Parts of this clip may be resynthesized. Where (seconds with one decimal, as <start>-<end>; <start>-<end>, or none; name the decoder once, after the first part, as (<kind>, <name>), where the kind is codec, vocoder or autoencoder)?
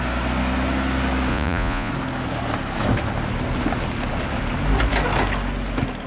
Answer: 1.3-1.9 (vocoder, Vocos)